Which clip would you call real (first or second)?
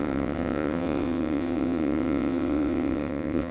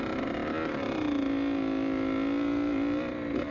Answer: second